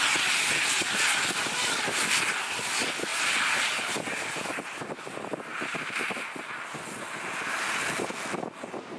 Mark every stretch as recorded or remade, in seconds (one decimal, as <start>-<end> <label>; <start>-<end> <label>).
0.0-5.5 recorded; 5.5-6.4 remade; 6.4-9.0 recorded